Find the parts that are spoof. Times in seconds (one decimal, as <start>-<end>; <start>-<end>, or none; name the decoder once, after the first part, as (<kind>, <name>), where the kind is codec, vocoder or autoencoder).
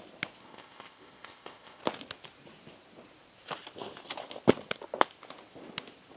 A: 0.4-1.8 (codec, ZipCodec)